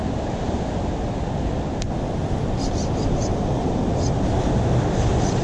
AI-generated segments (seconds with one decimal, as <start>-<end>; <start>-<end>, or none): 3.3-3.9